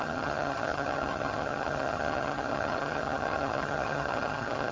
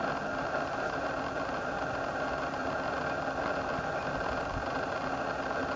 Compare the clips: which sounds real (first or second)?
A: second